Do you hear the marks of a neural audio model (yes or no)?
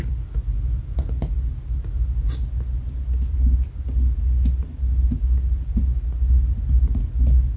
no